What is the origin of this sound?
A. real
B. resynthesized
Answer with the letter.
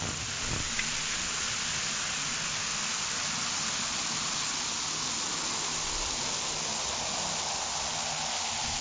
A